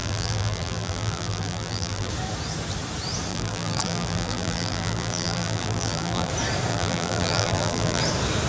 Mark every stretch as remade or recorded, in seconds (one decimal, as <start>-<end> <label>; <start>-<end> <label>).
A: 0.0-2.1 remade; 2.1-3.3 recorded; 3.3-6.3 remade; 6.3-6.7 recorded; 6.7-8.0 remade; 8.0-8.5 recorded